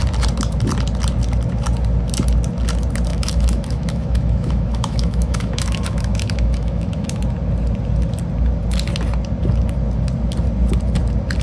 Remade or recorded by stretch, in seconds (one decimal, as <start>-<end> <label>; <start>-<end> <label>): 0.0-3.1 recorded; 3.1-7.2 remade; 7.2-11.4 recorded